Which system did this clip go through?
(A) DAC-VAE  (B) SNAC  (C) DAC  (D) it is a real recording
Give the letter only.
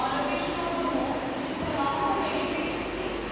D